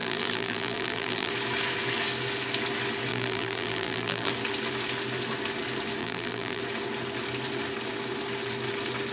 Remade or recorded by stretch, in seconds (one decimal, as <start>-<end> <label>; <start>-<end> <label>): 0.0-1.3 remade; 1.3-3.1 recorded; 3.1-4.3 remade; 4.3-6.0 recorded; 6.0-6.6 remade; 6.6-9.1 recorded